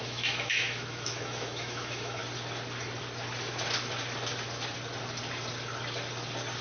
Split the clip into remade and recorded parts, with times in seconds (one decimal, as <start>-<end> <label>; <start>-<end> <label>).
0.0-2.2 remade; 2.2-6.6 recorded